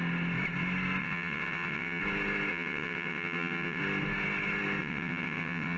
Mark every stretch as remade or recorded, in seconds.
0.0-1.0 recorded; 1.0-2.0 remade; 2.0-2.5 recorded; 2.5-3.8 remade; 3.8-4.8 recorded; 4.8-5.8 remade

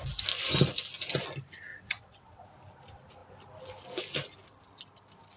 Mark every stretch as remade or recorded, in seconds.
0.0-1.7 recorded; 1.7-2.4 remade; 2.4-5.4 recorded